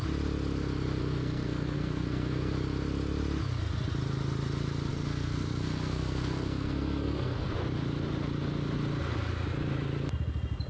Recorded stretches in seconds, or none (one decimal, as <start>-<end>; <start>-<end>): 0.0-1.0; 2.5-4.9; 7.5-10.7